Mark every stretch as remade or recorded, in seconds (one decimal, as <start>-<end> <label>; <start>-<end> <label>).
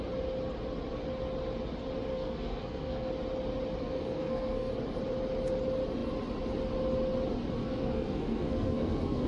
0.0-2.1 recorded; 2.1-3.1 remade; 3.1-3.8 recorded; 3.8-4.7 remade; 4.7-7.6 recorded; 7.6-9.3 remade